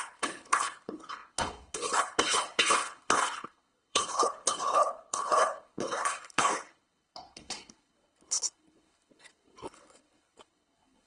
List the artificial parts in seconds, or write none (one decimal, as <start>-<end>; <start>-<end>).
0.0-11.1